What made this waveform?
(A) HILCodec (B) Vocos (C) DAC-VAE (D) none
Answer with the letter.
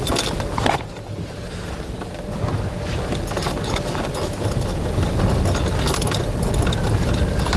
D